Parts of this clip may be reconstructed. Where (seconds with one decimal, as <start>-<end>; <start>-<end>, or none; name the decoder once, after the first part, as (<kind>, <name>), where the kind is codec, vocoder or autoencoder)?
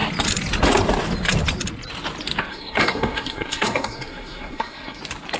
2.5-5.0 (codec, SNAC)